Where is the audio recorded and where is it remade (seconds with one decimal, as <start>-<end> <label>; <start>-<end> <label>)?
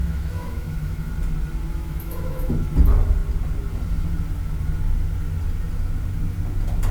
0.0-1.1 remade; 1.1-1.7 recorded; 1.7-2.5 remade; 2.5-6.9 recorded